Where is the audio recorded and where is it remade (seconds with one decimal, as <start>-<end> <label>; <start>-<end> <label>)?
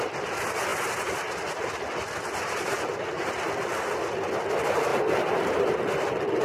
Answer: 0.0-4.9 recorded; 4.9-5.8 remade; 5.8-6.4 recorded